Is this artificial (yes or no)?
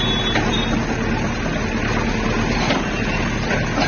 no